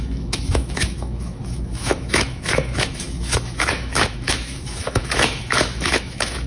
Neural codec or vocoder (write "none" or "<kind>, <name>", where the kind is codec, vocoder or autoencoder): autoencoder, DAC-VAE